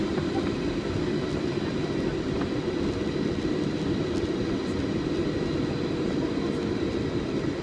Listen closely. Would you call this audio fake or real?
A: fake